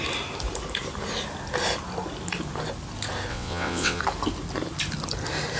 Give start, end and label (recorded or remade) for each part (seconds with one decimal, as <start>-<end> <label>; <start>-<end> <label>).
0.0-3.3 recorded; 3.3-4.0 remade; 4.0-5.6 recorded